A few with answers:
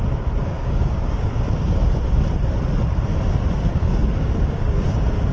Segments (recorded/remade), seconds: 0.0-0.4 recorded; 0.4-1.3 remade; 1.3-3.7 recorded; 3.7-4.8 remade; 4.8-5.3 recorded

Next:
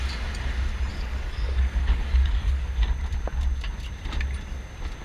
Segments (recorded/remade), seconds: 0.0-0.9 recorded; 0.9-2.8 remade; 2.8-5.0 recorded

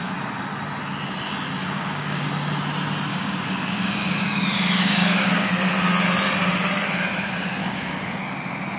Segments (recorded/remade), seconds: 0.0-1.6 recorded; 1.6-2.3 remade; 2.3-3.1 recorded; 3.1-5.5 remade; 5.5-7.6 recorded; 7.6-8.2 remade; 8.2-8.8 recorded

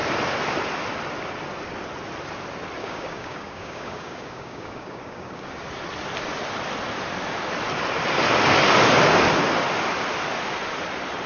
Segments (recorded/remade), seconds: 0.0-2.8 recorded; 2.8-5.5 remade; 5.5-11.3 recorded

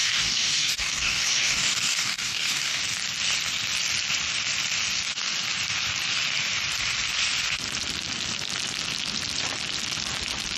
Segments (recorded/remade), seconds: 0.0-2.8 remade; 2.8-10.6 recorded